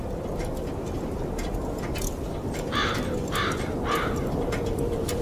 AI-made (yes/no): no